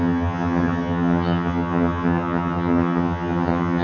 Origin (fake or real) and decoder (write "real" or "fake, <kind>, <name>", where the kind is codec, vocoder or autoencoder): fake, vocoder, HiFi-GAN